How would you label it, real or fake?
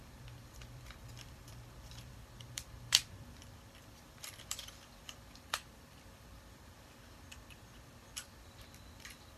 fake